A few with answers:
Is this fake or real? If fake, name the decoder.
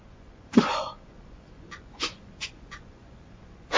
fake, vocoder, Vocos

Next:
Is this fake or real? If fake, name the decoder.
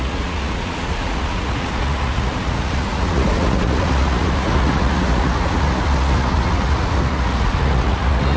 fake, vocoder, Vocos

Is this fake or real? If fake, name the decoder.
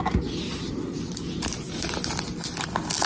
real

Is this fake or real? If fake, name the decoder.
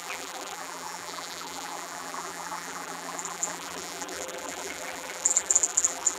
fake, vocoder, BigVGAN v2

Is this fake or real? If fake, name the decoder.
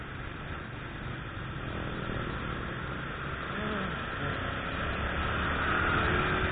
real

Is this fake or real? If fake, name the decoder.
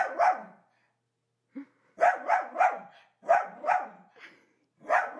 real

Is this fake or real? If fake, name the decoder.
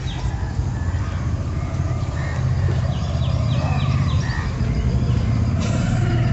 real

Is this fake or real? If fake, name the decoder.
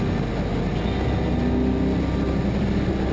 real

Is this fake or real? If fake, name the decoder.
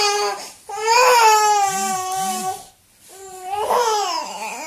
real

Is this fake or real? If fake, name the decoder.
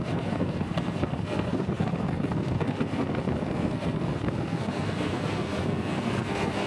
fake, codec, SNAC